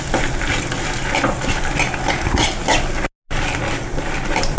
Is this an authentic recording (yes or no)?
yes